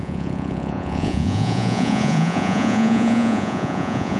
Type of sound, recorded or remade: remade